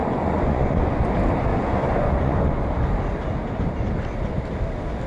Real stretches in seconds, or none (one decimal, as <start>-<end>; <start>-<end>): 1.1-1.5; 2.6-5.1